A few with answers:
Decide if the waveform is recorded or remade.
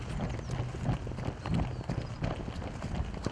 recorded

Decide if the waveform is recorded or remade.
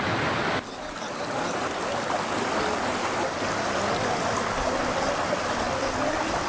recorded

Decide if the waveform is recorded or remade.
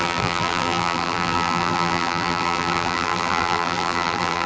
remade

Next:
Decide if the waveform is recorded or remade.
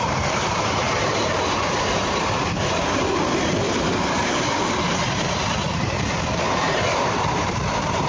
remade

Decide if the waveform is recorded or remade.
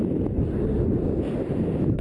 recorded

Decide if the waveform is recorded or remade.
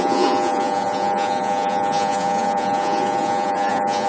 remade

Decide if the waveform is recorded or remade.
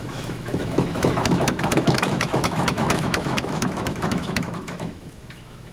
remade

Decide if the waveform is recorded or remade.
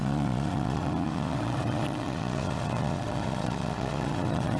remade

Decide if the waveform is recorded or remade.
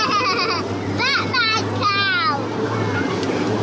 recorded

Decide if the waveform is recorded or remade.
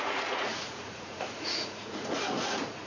remade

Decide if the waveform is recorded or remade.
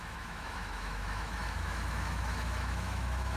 remade